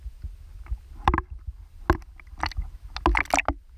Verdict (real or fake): real